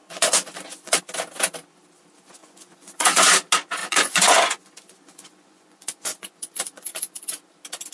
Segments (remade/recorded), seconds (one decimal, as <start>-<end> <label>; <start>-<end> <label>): 0.0-1.0 remade; 1.0-2.4 recorded; 2.4-3.3 remade; 3.3-3.8 recorded; 3.8-7.4 remade; 7.4-7.9 recorded